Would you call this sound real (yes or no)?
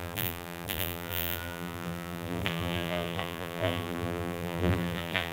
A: no